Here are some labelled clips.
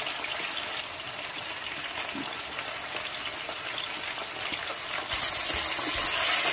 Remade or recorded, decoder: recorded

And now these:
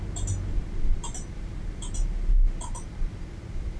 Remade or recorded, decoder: recorded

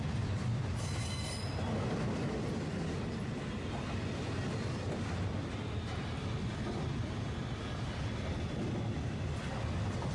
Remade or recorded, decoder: recorded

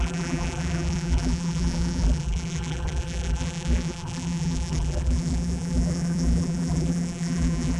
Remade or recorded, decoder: remade, vocoder, BigVGAN v2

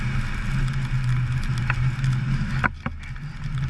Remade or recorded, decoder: recorded